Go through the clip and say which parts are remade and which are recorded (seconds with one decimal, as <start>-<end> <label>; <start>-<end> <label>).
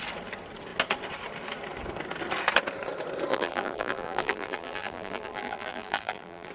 0.0-3.3 recorded; 3.3-6.5 remade